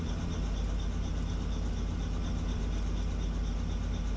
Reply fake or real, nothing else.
real